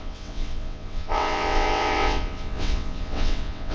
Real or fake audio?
fake